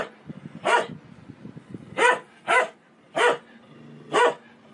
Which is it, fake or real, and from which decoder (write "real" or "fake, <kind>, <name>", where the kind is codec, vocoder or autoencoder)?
real